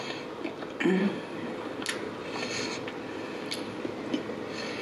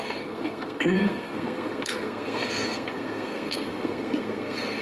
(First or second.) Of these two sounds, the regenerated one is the second